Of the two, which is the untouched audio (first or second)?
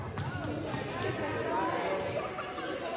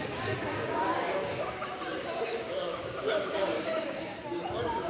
first